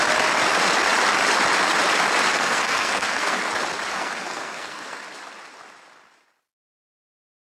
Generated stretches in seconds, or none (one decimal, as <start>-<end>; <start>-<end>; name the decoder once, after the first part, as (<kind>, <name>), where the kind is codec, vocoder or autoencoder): 2.3-3.4 (codec, SNAC); 3.9-5.0